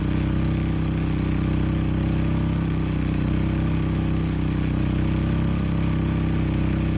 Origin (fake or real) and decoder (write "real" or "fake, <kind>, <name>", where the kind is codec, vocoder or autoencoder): real